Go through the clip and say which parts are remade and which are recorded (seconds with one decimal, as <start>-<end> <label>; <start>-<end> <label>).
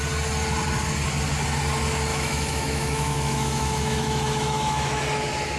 0.0-2.1 recorded; 2.1-5.0 remade; 5.0-5.6 recorded